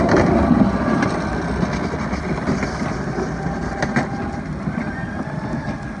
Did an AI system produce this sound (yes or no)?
no